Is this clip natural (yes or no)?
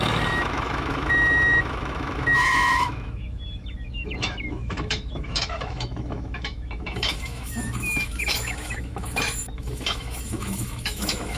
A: no